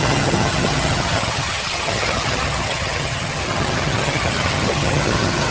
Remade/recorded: remade